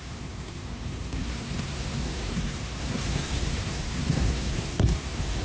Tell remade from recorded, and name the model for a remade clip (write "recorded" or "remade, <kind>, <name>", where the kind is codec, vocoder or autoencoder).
remade, codec, SNAC